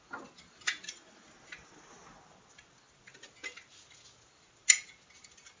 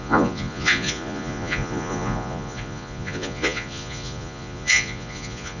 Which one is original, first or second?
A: first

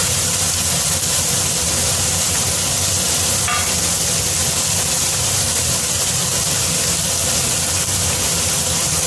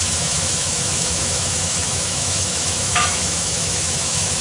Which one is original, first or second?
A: first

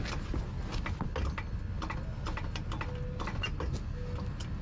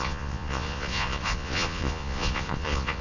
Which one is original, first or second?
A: first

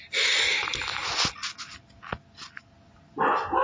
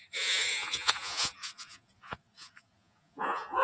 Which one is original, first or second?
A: first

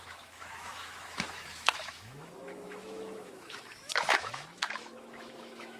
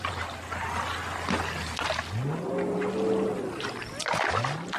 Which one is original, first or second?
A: second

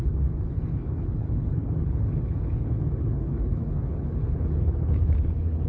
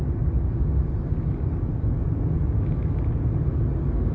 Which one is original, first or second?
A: second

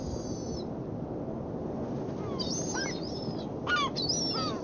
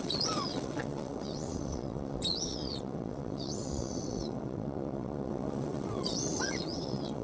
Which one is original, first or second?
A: first